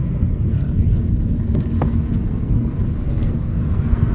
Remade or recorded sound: remade